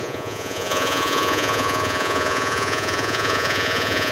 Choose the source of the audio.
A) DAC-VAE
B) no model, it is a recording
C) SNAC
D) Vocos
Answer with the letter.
D